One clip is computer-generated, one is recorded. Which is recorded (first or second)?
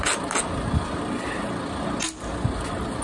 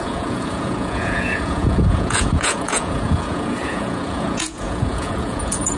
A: first